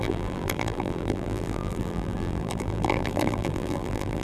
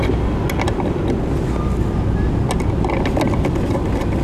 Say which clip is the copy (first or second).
first